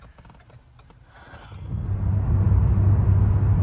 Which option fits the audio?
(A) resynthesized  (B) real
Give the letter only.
B